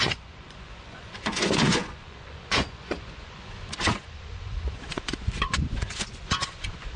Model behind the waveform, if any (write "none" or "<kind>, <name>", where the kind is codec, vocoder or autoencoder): vocoder, Vocos